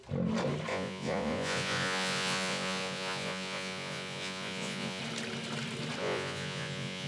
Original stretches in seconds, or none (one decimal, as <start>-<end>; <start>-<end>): 0.0-0.7; 5.0-6.0